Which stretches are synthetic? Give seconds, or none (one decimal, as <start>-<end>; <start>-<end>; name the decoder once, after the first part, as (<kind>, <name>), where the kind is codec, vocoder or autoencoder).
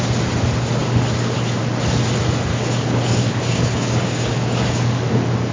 2.5-5.1 (codec, DAC)